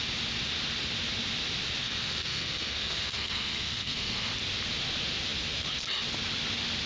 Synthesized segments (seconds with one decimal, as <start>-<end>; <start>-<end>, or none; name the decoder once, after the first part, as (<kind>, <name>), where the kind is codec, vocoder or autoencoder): 1.8-4.3 (codec, SNAC)